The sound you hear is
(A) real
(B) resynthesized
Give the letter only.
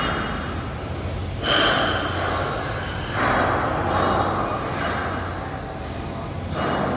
A